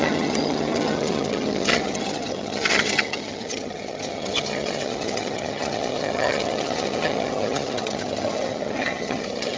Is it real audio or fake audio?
fake